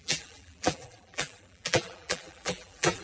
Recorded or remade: remade